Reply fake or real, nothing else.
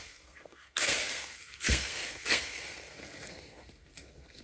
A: fake